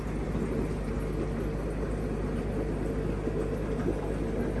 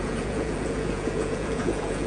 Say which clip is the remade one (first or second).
second